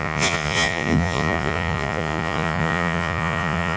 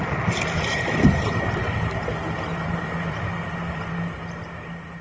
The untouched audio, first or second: second